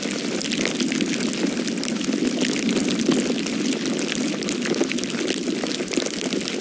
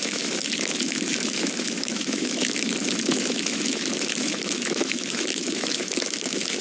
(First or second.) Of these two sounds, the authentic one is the first